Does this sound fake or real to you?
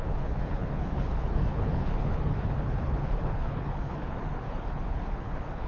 fake